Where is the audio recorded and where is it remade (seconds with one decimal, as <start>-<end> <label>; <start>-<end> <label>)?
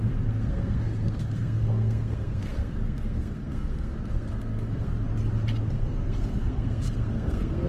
0.0-4.9 remade; 4.9-5.6 recorded; 5.6-7.7 remade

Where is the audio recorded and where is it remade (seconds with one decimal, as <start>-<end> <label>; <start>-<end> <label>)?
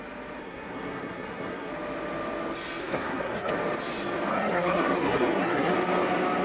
0.0-0.4 recorded; 0.4-1.7 remade; 1.7-2.8 recorded; 2.8-3.5 remade; 3.5-4.3 recorded; 4.3-5.7 remade; 5.7-6.4 recorded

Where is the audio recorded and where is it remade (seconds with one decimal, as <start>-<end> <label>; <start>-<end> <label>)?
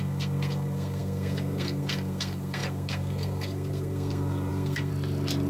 0.0-4.9 remade; 4.9-5.5 recorded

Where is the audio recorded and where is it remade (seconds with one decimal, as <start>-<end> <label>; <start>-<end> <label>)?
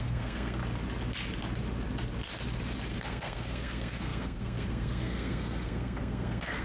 0.0-0.6 remade; 0.6-2.9 recorded; 2.9-6.6 remade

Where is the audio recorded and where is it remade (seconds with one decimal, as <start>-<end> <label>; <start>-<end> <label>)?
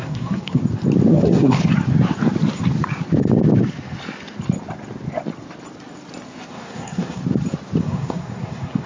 0.0-0.6 remade; 0.6-1.1 recorded; 1.1-1.6 remade; 1.6-6.5 recorded; 6.5-7.2 remade; 7.2-7.8 recorded; 7.8-8.9 remade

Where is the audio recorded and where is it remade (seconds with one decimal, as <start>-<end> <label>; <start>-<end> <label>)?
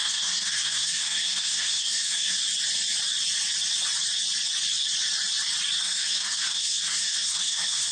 0.0-2.4 remade; 2.4-5.8 recorded; 5.8-7.9 remade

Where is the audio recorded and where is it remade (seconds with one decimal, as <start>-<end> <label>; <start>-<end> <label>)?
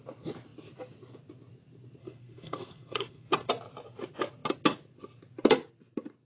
0.0-2.0 recorded; 2.0-3.5 remade; 3.5-6.2 recorded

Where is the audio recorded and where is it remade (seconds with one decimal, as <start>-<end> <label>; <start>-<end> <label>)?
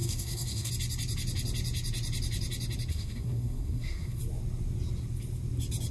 0.0-0.7 remade; 0.7-2.9 recorded; 2.9-4.2 remade; 4.2-5.9 recorded